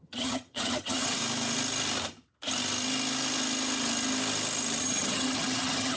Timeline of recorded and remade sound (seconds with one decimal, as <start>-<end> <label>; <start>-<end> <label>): 0.0-1.2 remade; 1.2-4.8 recorded; 4.8-6.0 remade